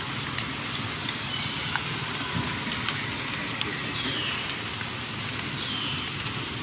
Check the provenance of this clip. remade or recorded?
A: recorded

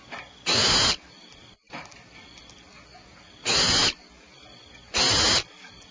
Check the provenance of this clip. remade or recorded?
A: recorded